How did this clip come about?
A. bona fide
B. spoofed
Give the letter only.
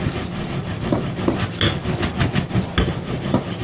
A